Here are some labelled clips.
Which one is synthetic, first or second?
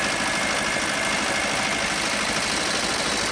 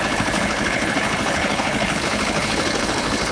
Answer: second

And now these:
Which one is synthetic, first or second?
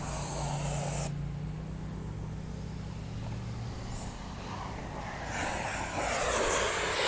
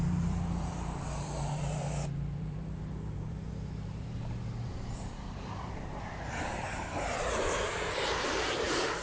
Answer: second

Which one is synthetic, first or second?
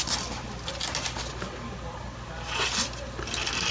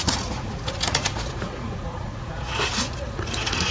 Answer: second